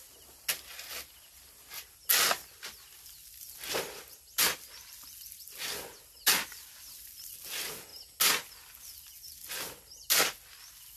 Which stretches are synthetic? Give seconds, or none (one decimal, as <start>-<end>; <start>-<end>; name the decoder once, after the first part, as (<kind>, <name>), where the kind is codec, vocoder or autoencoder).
none